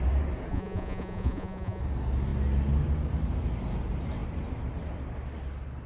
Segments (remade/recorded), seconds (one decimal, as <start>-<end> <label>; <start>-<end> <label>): 0.0-0.5 recorded; 0.5-1.8 remade; 1.8-5.9 recorded